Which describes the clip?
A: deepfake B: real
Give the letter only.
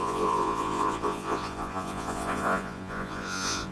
A